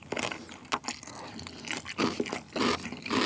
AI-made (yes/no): no